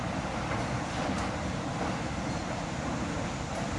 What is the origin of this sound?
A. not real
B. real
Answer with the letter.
A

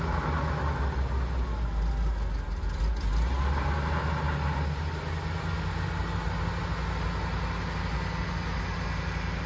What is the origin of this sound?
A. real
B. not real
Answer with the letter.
A